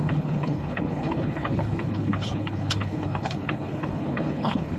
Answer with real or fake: fake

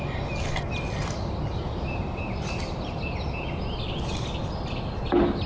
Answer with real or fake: real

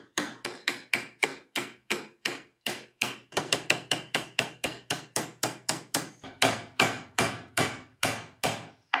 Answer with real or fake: fake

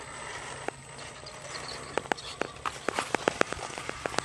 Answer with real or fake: real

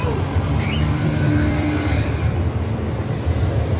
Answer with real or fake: fake